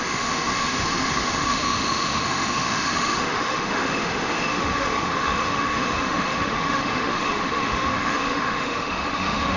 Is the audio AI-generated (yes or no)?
yes